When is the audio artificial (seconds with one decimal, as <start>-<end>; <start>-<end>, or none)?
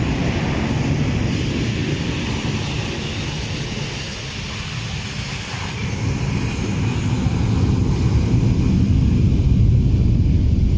none